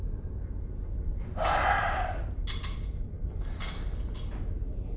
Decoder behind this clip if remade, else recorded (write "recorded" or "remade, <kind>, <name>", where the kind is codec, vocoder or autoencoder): recorded